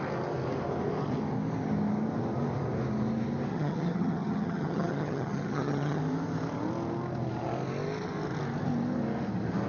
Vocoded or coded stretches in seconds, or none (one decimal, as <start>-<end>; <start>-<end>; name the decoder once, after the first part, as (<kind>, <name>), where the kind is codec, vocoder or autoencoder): 3.5-6.0 (vocoder, HiFi-GAN)